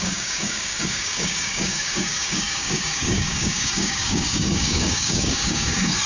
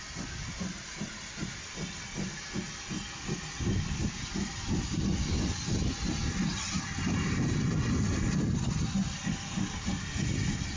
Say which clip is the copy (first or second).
first